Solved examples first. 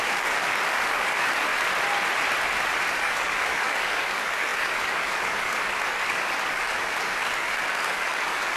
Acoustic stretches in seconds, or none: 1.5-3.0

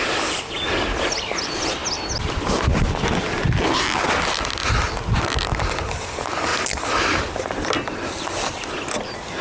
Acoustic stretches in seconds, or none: 0.0-9.4

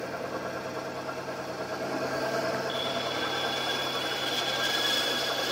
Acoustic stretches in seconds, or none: 0.0-1.7; 2.7-5.5